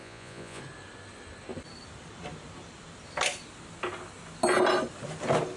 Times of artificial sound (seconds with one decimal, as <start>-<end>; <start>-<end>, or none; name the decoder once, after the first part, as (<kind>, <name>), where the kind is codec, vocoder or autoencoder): 0.0-0.6 (vocoder, Vocos)